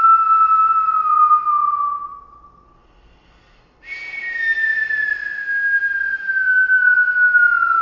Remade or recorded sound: recorded